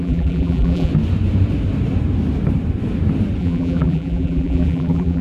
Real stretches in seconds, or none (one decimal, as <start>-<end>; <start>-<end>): 0.9-3.4